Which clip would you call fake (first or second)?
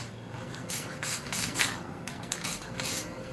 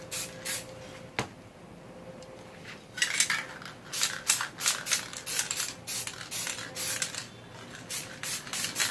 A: first